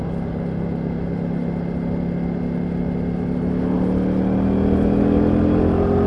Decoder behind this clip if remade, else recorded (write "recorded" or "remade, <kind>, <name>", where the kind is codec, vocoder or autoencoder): recorded